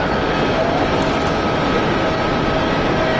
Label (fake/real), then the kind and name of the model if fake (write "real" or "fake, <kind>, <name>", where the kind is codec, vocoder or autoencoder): real